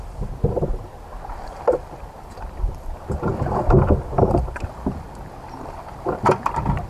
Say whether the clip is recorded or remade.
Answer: recorded